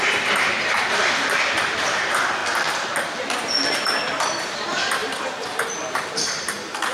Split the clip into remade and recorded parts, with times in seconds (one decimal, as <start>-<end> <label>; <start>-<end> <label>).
0.0-2.4 remade; 2.4-4.2 recorded; 4.2-6.9 remade

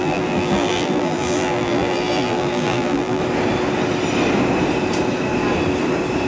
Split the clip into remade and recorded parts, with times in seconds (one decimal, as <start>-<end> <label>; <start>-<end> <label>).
0.0-3.2 remade; 3.2-6.3 recorded

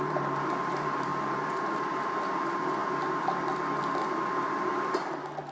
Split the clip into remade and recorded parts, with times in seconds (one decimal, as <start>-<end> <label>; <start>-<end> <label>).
0.0-2.8 remade; 2.8-4.3 recorded; 4.3-5.5 remade